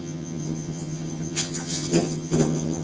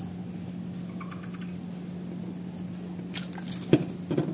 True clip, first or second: second